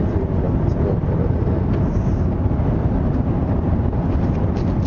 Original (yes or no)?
no